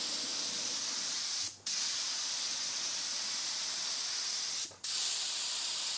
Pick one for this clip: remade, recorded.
recorded